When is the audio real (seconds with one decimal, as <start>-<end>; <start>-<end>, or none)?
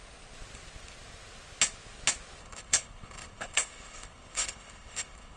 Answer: 0.0-2.4